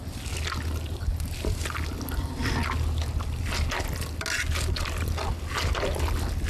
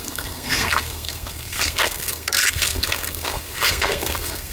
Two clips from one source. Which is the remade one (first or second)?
second